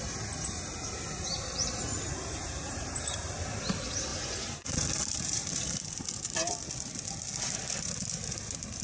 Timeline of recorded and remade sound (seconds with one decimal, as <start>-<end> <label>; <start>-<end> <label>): 0.0-1.3 recorded; 1.3-3.3 remade; 3.3-4.1 recorded; 4.1-6.5 remade; 6.5-8.8 recorded